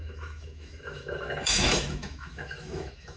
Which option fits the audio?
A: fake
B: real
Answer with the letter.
A